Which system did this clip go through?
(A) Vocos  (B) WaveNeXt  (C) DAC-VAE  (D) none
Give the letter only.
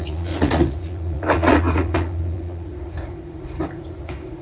A